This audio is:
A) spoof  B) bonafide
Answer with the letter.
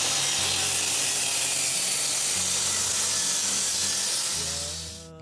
B